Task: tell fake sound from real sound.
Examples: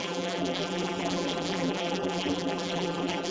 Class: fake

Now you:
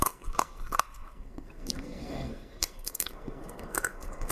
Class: fake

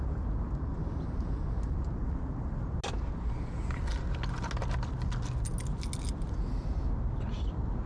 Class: real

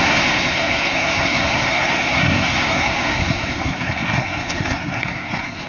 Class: fake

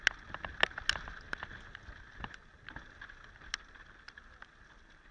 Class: real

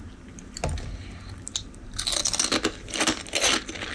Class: real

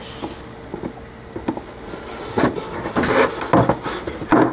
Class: real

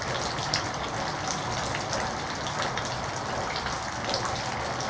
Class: real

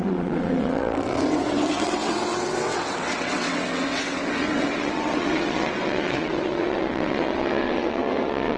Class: fake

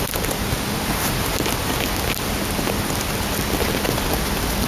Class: real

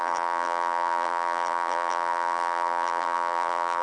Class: fake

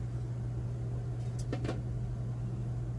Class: real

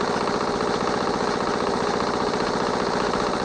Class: real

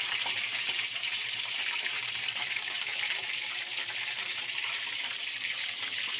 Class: fake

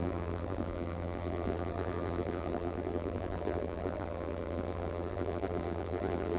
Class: fake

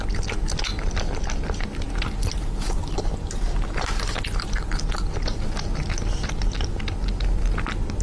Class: real